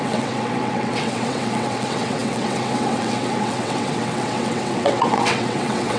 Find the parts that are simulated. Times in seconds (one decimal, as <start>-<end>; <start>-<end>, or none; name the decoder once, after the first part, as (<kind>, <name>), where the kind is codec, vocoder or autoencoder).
0.0-6.0 (vocoder, WaveNeXt)